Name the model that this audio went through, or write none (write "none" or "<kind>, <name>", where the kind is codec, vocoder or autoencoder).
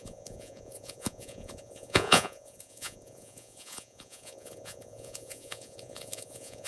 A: vocoder, Vocos